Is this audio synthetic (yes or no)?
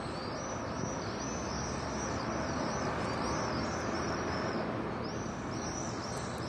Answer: no